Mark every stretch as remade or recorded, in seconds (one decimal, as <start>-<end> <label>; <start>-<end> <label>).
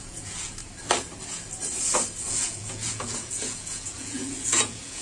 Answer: 0.0-0.6 remade; 0.6-2.2 recorded; 2.2-5.0 remade